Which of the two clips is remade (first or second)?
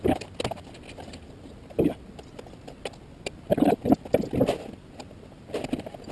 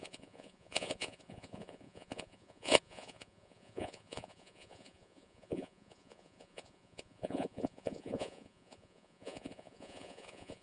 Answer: second